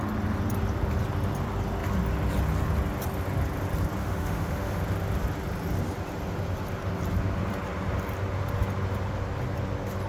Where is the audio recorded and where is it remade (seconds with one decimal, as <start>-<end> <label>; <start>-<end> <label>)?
0.0-4.0 recorded; 4.0-4.8 remade; 4.8-10.1 recorded